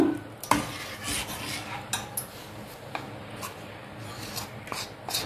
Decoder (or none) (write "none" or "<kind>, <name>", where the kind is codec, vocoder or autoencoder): none